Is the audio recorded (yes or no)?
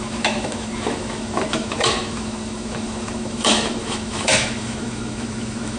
no